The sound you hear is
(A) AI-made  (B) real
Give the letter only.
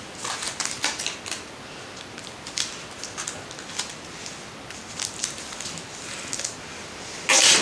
B